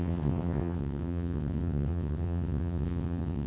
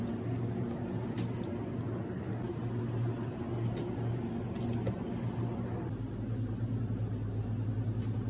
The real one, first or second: second